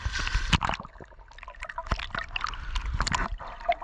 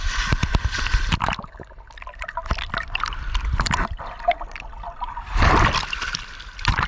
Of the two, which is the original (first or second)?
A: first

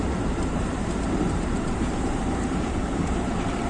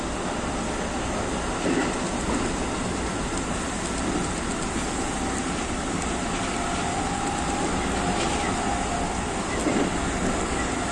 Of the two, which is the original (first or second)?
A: second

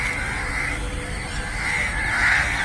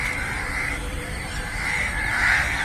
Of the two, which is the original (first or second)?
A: first